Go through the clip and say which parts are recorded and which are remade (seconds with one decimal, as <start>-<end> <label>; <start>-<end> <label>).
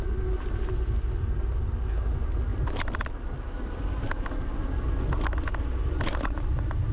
0.0-2.5 recorded; 2.5-4.2 remade; 4.2-5.5 recorded; 5.5-6.9 remade